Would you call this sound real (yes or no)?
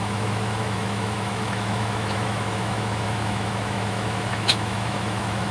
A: no